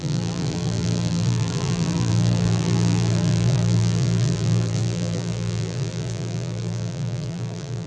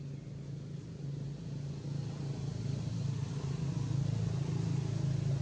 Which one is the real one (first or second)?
second